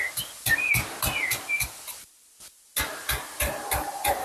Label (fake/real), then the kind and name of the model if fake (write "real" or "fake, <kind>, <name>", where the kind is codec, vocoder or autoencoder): real